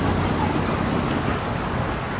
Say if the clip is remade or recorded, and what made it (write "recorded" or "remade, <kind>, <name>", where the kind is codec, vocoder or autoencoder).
recorded